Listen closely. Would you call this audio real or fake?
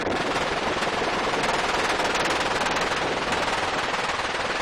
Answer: real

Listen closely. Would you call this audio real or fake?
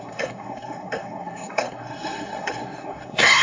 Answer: fake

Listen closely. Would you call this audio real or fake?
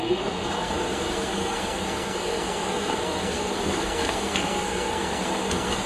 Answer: fake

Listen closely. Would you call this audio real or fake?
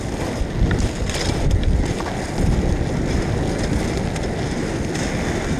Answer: real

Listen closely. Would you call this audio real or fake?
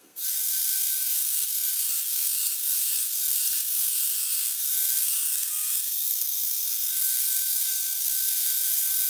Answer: fake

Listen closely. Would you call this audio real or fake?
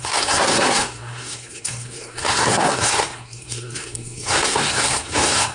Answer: fake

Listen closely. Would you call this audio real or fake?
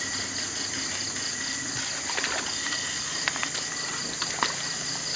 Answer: real